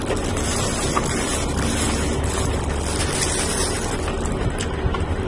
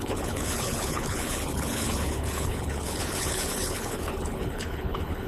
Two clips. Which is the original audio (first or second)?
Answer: first